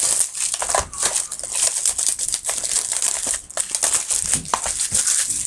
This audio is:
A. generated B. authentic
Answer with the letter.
B